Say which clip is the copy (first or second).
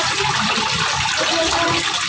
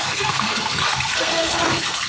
second